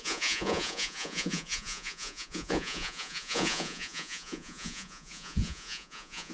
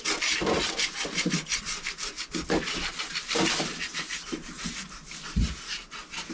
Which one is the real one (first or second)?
second